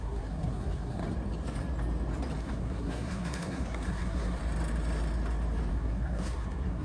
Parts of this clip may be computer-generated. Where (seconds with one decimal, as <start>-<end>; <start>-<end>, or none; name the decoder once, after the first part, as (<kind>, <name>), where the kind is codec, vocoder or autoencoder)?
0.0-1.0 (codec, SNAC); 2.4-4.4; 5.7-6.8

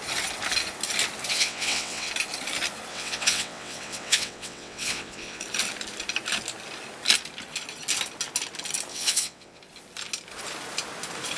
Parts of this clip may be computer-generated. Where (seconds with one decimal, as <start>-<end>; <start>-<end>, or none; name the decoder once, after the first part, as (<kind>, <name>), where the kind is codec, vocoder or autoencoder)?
1.3-2.1 (vocoder, WaveNeXt); 2.9-5.4; 8.9-9.6

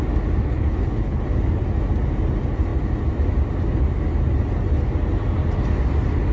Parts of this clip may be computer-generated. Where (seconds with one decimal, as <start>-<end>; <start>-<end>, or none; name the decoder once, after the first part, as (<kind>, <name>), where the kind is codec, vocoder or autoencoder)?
0.4-1.2 (codec, HILCodec)

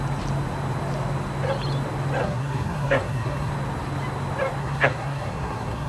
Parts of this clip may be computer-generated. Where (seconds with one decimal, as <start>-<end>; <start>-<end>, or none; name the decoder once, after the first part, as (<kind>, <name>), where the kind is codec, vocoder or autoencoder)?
2.2-3.5 (codec, SNAC); 4.6-5.9

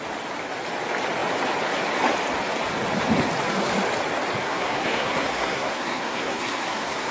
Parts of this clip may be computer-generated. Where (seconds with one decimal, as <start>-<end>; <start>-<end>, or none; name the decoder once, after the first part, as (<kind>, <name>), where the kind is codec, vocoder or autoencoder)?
4.4-7.1 (codec, SNAC)

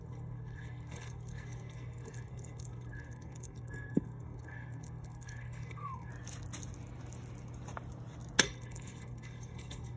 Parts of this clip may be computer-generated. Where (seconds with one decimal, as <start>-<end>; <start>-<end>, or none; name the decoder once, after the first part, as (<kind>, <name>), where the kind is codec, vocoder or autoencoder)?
0.0-6.1 (codec, SNAC); 8.4-10.0

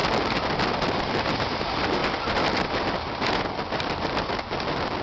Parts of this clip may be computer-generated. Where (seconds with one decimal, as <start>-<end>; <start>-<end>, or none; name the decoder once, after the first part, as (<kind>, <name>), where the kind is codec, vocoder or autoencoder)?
none

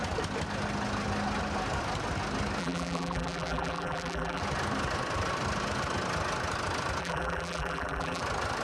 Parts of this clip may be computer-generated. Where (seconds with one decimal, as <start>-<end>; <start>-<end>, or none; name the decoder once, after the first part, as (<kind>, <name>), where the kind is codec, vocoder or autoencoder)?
2.6-4.4 (vocoder, BigVGAN v2); 7.0-8.2